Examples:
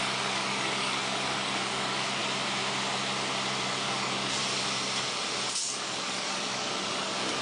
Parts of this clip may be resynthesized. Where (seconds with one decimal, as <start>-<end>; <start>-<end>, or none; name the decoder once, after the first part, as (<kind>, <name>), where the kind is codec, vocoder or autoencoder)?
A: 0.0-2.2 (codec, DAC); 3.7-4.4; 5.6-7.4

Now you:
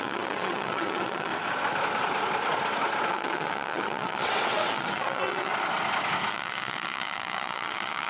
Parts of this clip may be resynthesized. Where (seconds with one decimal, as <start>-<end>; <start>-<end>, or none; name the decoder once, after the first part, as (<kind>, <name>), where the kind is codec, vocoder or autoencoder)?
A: 0.0-1.3 (vocoder, WaveNeXt); 3.1-5.5; 6.3-8.1

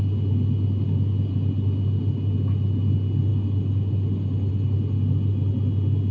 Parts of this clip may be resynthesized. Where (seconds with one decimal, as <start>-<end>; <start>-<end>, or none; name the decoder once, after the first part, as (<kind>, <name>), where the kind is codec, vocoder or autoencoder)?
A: none